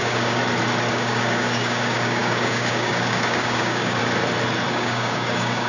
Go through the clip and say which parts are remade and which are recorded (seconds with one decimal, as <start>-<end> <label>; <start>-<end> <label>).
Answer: 0.0-0.4 remade; 0.4-0.9 recorded; 0.9-4.0 remade; 4.0-4.7 recorded; 4.7-5.7 remade